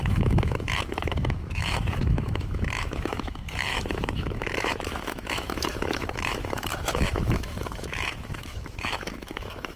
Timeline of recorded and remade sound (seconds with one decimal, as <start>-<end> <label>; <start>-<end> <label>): 0.0-9.8 remade